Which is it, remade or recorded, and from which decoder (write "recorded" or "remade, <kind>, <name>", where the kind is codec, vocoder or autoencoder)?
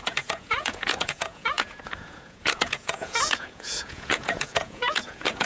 remade, vocoder, Vocos